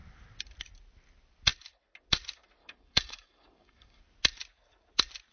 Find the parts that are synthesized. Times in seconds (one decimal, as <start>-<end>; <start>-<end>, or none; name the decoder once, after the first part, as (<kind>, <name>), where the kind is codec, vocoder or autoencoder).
2.6-4.0 (codec, DAC)